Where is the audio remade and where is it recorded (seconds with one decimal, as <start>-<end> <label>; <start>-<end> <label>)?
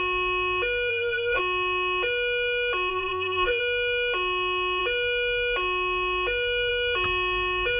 0.0-0.9 recorded; 0.9-1.4 remade; 1.4-2.9 recorded; 2.9-3.6 remade; 3.6-7.8 recorded